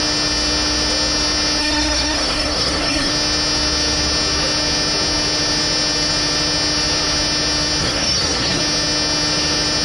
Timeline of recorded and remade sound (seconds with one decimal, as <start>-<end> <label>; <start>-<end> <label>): 0.0-1.6 recorded; 1.6-3.1 remade; 3.1-7.8 recorded; 7.8-8.6 remade; 8.6-9.8 recorded